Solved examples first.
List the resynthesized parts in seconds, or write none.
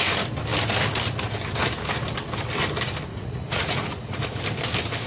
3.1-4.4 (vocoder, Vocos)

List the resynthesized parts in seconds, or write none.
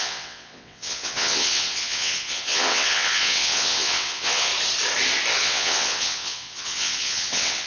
0.0-4.5 (vocoder, WaveNeXt); 5.4-7.7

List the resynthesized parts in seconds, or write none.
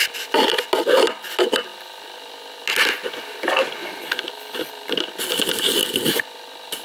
3.8-5.0 (vocoder, BigVGAN v2)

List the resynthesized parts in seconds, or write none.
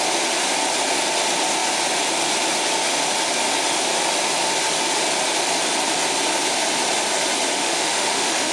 7.5-8.5 (autoencoder, DAC-VAE)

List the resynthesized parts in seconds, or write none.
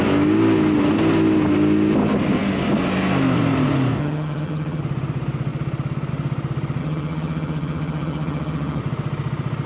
4.0-4.8 (vocoder, HiFi-GAN); 6.8-8.8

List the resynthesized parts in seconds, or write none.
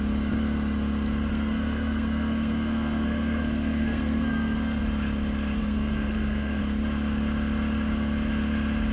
1.3-4.8 (codec, SNAC); 5.6-6.6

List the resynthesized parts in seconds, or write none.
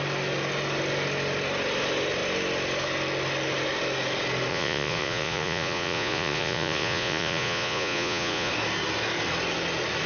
4.5-8.5 (vocoder, Vocos)